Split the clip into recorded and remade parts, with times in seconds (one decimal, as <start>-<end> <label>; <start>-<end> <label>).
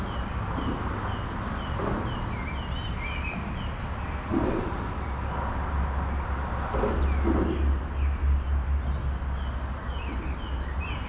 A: 0.0-11.1 recorded